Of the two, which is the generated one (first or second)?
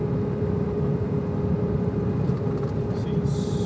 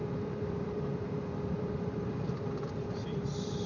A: second